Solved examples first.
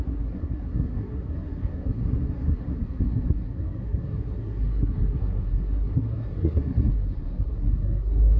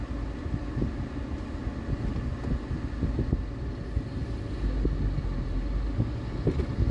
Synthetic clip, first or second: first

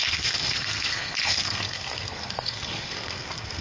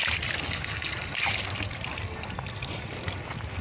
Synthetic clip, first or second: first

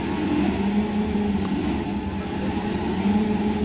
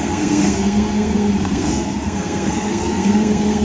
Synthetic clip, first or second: second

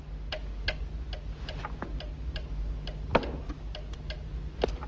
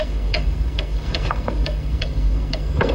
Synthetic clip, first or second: second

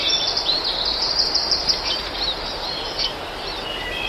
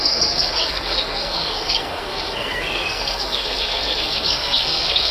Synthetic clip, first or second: second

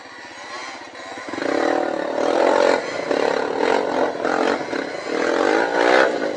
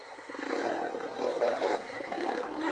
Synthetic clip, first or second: second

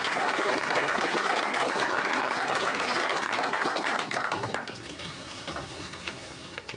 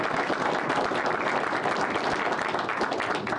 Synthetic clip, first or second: first